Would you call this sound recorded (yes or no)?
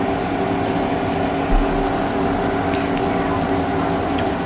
yes